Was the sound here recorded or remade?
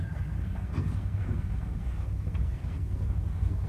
remade